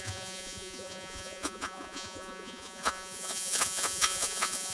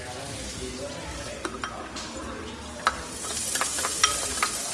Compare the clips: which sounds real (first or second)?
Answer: second